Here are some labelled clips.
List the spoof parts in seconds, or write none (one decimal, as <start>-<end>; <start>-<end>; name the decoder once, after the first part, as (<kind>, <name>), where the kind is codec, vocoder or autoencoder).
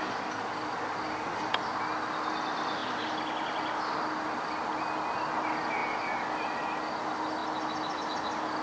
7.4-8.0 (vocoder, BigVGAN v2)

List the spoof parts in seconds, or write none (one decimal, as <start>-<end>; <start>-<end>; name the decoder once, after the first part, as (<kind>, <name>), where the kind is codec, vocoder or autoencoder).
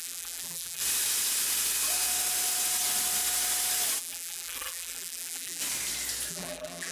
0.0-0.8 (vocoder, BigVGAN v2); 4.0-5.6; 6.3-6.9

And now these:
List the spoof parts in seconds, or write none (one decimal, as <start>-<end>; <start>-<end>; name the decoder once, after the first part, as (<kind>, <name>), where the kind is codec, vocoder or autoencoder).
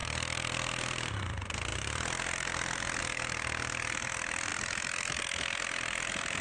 0.0-1.1 (vocoder, BigVGAN v2); 1.7-3.0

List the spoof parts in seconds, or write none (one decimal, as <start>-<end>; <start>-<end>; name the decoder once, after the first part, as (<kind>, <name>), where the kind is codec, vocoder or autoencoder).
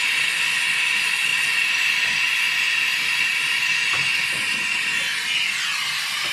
none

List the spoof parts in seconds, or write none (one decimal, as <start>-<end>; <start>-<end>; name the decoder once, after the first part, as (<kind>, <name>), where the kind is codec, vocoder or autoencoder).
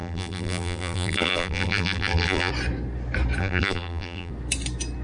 0.0-2.5 (vocoder, BigVGAN v2); 3.4-4.3